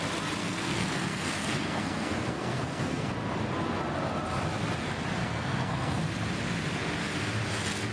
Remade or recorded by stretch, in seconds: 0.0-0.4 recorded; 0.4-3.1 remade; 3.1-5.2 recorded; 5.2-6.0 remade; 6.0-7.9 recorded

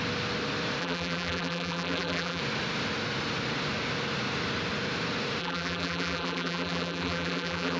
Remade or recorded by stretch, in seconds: 0.0-0.8 recorded; 0.8-2.4 remade; 2.4-5.4 recorded; 5.4-7.8 remade

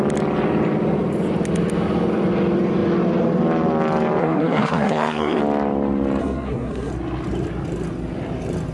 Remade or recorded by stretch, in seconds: 0.0-4.2 recorded; 4.2-5.4 remade; 5.4-6.2 recorded; 6.2-6.9 remade; 6.9-8.7 recorded

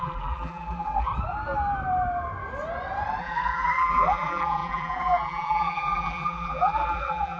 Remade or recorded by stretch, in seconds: 0.0-1.1 remade; 1.1-3.2 recorded; 3.2-7.4 remade

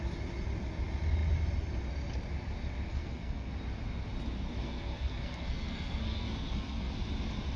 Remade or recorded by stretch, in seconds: 0.0-2.9 recorded; 2.9-3.5 remade; 3.5-4.6 recorded; 4.6-6.9 remade; 6.9-7.6 recorded

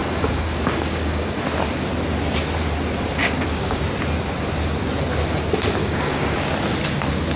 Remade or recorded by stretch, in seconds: 0.0-1.4 remade; 1.4-3.2 recorded; 3.2-3.8 remade; 3.8-5.8 recorded; 5.8-6.5 remade; 6.5-7.4 recorded